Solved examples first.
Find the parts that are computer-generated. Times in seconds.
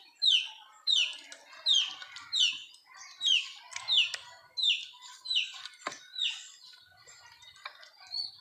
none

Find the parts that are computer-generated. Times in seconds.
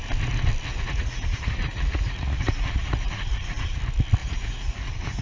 0.7-3.8 (vocoder, Vocos); 4.2-5.2